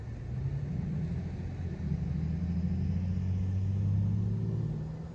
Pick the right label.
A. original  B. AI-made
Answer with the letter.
A